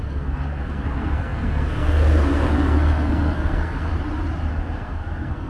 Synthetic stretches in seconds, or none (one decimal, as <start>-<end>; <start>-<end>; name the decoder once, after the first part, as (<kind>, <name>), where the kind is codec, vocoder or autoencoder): 0.0-3.9 (codec, SNAC); 4.5-5.5